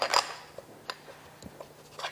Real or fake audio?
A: real